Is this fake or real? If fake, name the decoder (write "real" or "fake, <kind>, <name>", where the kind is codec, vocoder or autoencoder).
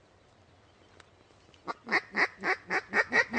real